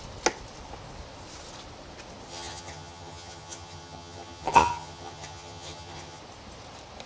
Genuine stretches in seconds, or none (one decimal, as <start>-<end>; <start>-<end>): 0.0-2.3; 6.2-7.1